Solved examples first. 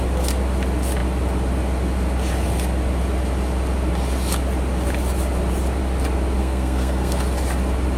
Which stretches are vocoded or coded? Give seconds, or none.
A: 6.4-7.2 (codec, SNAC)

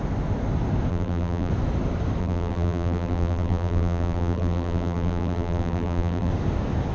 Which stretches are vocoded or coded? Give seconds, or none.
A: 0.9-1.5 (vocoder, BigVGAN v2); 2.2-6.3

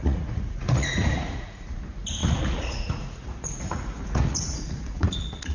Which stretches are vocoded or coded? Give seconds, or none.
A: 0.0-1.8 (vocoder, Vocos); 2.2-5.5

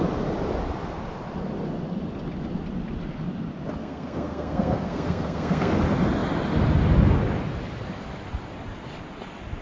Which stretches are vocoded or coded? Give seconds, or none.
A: 3.8-5.7 (codec, SNAC)

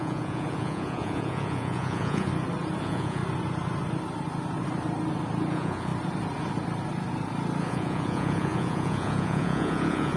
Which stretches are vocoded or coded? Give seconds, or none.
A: 0.0-2.3 (vocoder, Vocos); 2.8-3.2; 5.5-5.9; 7.6-10.2

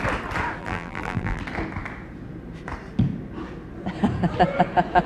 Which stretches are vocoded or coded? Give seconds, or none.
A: 0.6-1.4 (vocoder, BigVGAN v2)